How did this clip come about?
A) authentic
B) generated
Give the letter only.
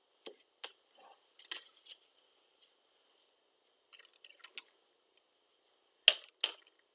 A